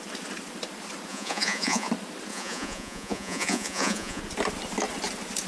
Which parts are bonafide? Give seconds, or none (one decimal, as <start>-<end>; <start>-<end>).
0.0-1.1; 1.9-2.3; 4.2-5.5